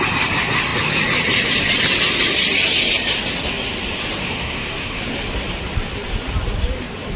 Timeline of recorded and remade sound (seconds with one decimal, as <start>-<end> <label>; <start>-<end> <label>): 0.0-4.3 recorded; 4.3-5.0 remade; 5.0-7.2 recorded